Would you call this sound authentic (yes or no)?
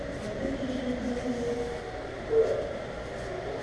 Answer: yes